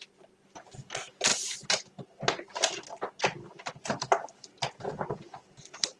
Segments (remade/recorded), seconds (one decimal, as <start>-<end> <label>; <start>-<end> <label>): 0.0-6.0 recorded